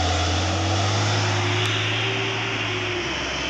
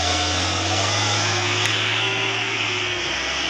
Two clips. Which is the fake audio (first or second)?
second